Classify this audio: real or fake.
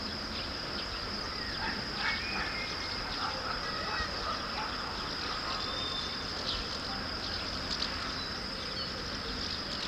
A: real